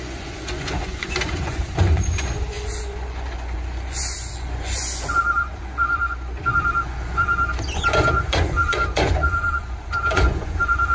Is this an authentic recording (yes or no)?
no